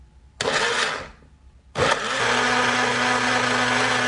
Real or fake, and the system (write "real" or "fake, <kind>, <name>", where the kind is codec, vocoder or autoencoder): real